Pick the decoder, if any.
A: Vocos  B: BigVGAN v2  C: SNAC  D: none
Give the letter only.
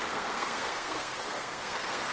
C